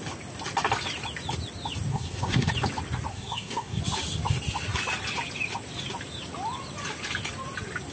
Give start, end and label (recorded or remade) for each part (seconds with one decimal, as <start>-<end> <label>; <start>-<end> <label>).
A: 0.0-1.9 recorded; 1.9-2.5 remade; 2.5-3.1 recorded; 3.1-3.8 remade; 3.8-7.9 recorded